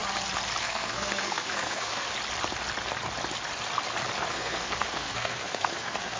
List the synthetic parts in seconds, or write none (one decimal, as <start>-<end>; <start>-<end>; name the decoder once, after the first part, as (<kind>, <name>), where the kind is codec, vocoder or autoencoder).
0.6-2.1 (codec, SNAC); 4.3-6.2